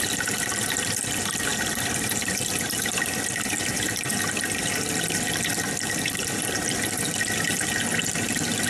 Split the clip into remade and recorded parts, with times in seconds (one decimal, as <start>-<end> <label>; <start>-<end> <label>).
0.0-8.7 recorded